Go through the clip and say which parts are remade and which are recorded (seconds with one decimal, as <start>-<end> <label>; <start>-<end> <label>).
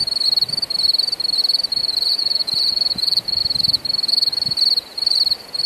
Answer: 0.0-1.8 recorded; 1.8-3.4 remade; 3.4-5.7 recorded